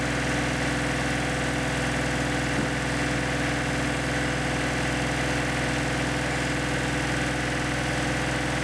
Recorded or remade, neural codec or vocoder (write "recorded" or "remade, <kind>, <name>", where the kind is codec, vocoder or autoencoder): recorded